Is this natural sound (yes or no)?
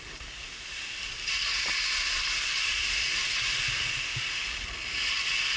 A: yes